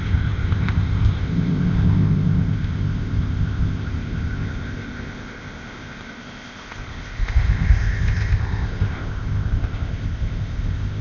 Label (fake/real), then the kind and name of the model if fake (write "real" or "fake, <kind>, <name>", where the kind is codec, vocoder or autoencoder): fake, codec, ZipCodec